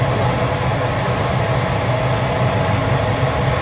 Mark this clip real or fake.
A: real